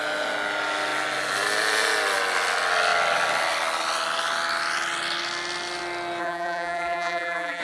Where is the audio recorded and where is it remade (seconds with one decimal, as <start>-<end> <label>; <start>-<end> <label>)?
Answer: 0.0-6.2 recorded; 6.2-7.6 remade